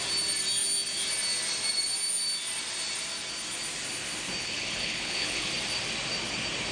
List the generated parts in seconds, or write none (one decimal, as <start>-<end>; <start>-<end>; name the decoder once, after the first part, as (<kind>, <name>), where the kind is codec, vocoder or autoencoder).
4.4-5.5 (codec, HILCodec)